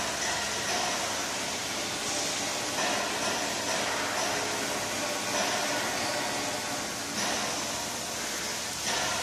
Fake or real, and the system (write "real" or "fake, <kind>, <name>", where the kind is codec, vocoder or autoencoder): real